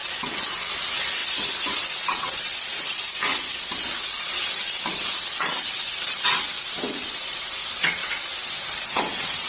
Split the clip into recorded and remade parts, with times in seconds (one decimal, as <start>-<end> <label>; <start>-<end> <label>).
0.0-9.5 remade